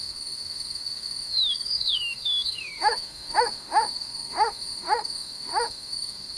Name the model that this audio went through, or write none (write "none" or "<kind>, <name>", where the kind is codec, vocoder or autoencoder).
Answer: autoencoder, DAC-VAE